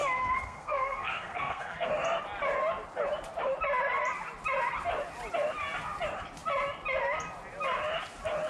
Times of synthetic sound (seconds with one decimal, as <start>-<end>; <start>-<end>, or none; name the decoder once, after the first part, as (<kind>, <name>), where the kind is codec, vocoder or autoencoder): 0.0-1.9 (codec, SNAC)